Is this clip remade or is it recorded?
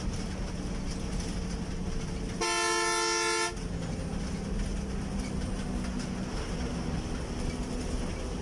recorded